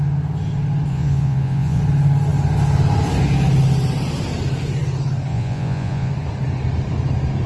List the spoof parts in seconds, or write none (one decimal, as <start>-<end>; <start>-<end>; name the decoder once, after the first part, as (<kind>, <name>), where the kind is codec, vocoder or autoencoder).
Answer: 0.9-1.8 (vocoder, Vocos); 5.3-6.1